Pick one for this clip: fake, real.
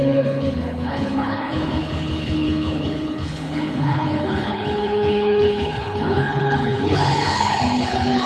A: fake